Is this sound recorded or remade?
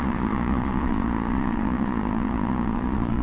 remade